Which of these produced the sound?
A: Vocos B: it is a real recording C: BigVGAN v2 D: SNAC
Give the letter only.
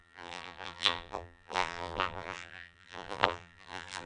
C